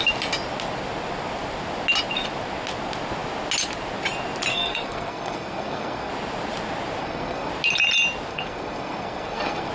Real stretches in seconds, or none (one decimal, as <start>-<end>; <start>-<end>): 0.0-4.5; 6.1-7.0; 7.5-8.3